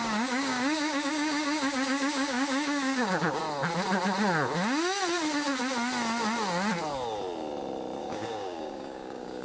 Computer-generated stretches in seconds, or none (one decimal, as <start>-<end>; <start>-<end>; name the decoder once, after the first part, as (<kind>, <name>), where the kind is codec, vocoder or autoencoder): 0.0-3.4 (codec, DAC); 8.0-9.4